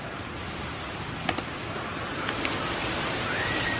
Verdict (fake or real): real